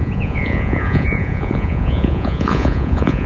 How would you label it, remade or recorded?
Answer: remade